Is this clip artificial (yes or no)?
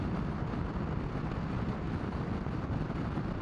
no